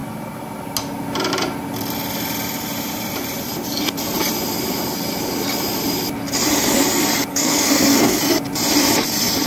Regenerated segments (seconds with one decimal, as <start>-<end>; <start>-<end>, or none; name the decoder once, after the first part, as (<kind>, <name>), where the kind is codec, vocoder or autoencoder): 7.3-8.2 (codec, SNAC)